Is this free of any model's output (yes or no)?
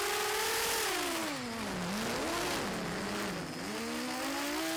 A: yes